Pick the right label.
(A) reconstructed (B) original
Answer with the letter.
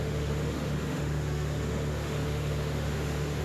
A